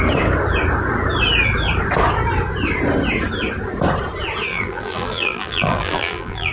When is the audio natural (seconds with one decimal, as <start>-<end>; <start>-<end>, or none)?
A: 0.0-4.5